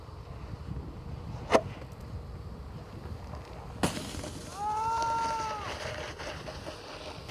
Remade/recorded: recorded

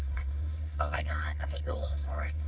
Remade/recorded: remade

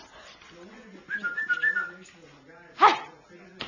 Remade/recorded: recorded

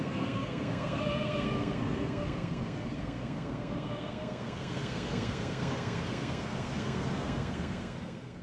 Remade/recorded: remade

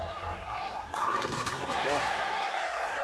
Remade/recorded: remade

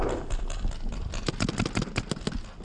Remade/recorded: recorded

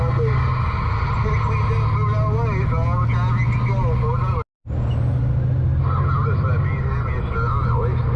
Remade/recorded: recorded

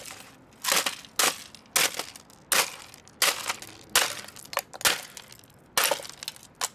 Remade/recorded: recorded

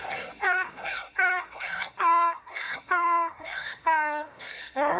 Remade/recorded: remade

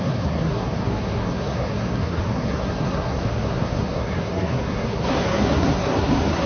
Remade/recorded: remade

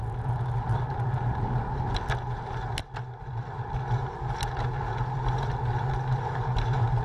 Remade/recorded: recorded